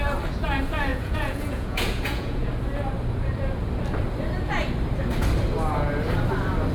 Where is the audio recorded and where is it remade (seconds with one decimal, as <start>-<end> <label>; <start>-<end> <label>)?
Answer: 0.0-0.9 recorded; 0.9-2.5 remade; 2.5-6.7 recorded